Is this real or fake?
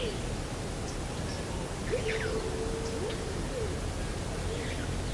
real